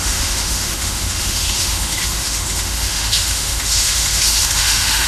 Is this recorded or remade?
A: remade